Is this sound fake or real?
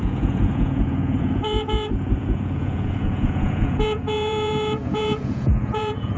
fake